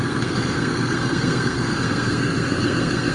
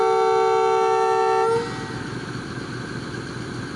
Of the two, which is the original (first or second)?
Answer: second